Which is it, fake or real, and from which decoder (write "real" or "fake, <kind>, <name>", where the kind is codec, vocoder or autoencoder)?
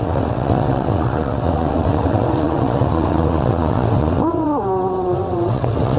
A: fake, vocoder, WaveNeXt